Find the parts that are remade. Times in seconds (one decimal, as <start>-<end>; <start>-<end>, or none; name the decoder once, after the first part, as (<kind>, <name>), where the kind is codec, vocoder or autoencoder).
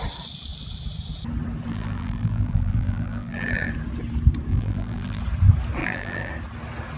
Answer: 1.7-3.7 (vocoder, BigVGAN v2); 4.5-5.2; 5.8-6.3